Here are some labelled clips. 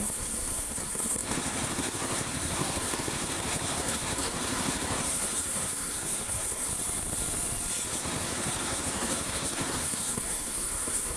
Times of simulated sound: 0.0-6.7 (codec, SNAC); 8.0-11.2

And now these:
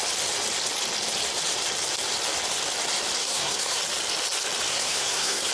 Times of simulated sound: 3.2-3.8 (codec, SNAC); 4.7-5.5